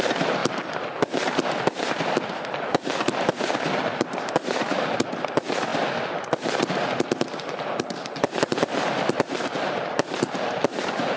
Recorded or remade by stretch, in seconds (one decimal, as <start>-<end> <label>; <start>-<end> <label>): 0.0-0.4 remade; 0.4-1.9 recorded; 1.9-5.7 remade; 5.7-7.8 recorded; 7.8-11.2 remade